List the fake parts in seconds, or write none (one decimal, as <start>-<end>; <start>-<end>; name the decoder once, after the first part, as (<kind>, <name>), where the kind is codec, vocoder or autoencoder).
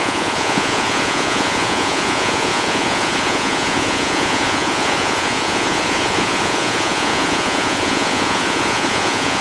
0.0-9.4 (vocoder, Vocos)